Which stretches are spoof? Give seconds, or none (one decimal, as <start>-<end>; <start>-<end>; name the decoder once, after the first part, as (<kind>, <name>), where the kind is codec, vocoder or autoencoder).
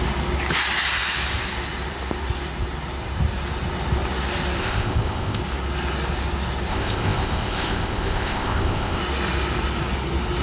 4.6-5.4 (codec, ZipCodec); 6.7-9.0